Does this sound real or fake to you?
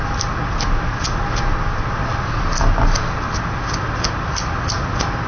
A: real